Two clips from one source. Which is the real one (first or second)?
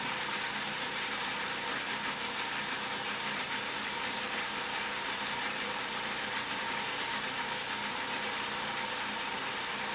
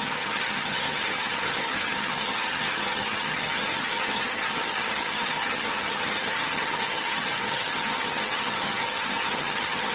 first